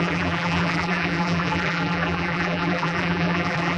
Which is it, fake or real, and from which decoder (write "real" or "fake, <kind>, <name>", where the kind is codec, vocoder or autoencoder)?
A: fake, vocoder, BigVGAN v2